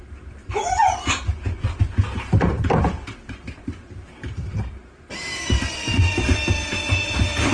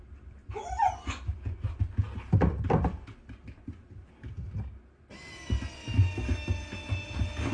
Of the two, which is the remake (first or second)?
first